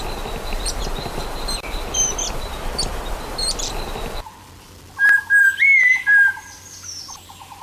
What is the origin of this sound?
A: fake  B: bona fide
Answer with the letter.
A